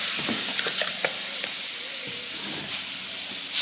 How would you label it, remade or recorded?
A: recorded